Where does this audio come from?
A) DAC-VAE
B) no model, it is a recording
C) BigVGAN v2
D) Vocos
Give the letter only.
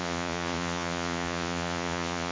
D